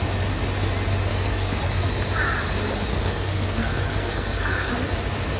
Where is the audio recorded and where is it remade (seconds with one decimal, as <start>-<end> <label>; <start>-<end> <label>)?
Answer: 0.0-1.1 recorded; 1.1-1.6 remade; 1.6-2.9 recorded; 2.9-4.7 remade; 4.7-5.4 recorded